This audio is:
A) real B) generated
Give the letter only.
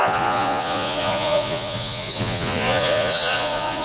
B